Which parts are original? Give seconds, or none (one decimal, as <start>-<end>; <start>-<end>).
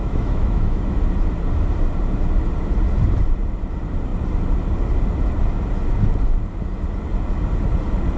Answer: 1.0-8.2